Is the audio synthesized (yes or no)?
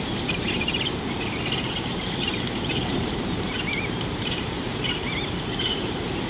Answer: yes